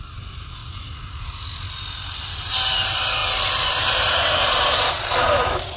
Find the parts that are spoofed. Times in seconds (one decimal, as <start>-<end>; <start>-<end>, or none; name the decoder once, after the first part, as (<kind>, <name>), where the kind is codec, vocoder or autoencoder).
0.0-0.6 (vocoder, BigVGAN v2); 2.3-3.2; 3.7-5.8